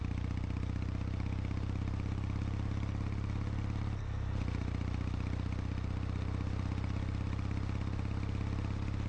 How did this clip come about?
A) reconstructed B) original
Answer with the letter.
B